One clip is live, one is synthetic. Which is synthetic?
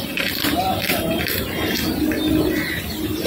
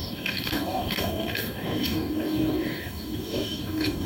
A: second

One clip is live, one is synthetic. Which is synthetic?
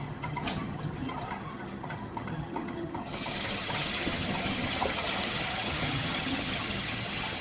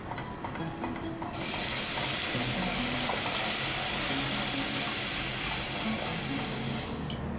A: first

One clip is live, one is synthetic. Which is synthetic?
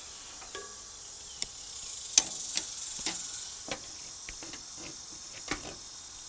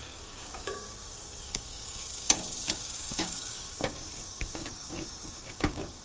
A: second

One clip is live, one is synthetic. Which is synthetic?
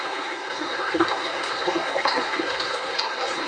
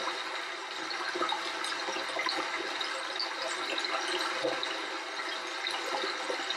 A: first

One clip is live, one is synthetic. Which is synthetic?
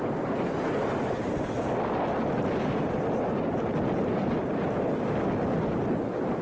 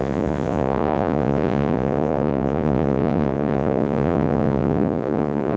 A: second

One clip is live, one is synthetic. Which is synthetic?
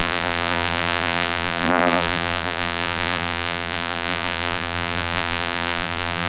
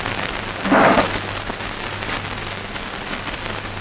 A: first